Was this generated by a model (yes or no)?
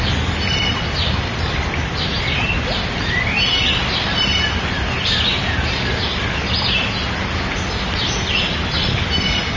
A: no